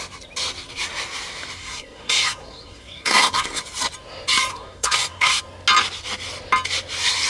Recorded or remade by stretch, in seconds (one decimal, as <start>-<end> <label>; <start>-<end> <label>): 0.0-1.6 recorded; 1.6-3.6 remade; 3.6-4.5 recorded; 4.5-5.4 remade; 5.4-7.3 recorded